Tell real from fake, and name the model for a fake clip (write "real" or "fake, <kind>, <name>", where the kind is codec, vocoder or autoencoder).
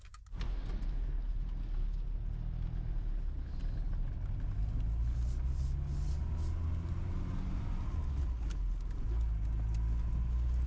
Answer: real